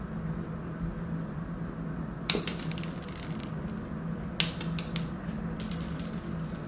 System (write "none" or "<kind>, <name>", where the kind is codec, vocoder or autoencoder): none